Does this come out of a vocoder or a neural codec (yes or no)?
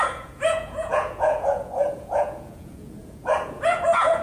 yes